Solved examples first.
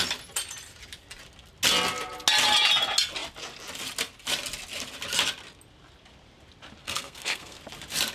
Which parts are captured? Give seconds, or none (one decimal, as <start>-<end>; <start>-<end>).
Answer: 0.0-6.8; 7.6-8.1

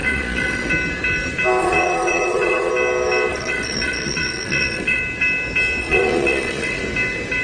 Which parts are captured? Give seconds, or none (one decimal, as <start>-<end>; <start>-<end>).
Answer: 0.7-1.6; 2.7-3.3; 5.0-5.8; 6.8-7.4

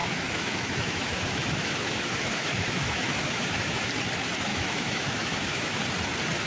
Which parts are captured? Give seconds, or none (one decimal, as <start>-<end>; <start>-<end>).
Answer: 3.9-4.5; 5.8-6.5